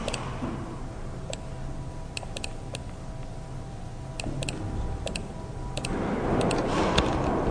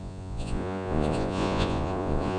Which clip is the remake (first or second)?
second